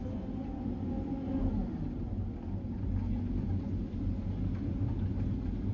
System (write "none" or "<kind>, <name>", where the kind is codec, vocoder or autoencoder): none